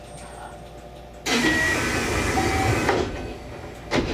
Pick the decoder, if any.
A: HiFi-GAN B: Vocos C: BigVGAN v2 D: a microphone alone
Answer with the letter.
D